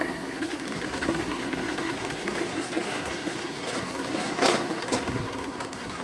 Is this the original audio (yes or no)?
no